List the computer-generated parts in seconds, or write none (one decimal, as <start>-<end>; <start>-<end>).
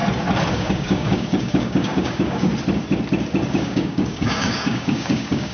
0.5-2.5; 3.5-5.5